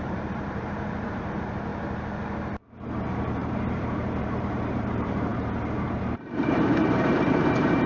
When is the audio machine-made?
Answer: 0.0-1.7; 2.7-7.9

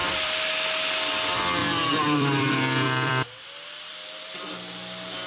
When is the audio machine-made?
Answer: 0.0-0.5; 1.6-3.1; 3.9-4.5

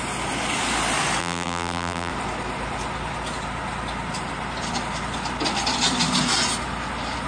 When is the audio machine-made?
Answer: 1.2-2.1